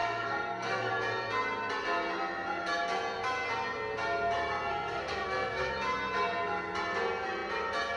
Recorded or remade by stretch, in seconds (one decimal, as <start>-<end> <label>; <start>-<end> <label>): 0.0-0.9 remade; 0.9-4.7 recorded; 4.7-5.7 remade; 5.7-8.0 recorded